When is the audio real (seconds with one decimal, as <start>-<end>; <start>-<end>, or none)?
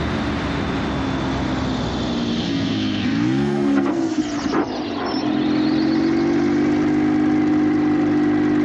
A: 0.0-2.4; 4.2-8.6